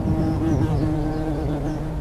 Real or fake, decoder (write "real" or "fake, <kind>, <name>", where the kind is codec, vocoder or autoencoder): fake, vocoder, BigVGAN v2